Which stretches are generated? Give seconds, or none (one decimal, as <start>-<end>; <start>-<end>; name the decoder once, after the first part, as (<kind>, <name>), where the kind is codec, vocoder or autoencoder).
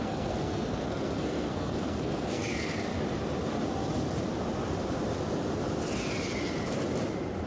0.0-2.9 (codec, SNAC)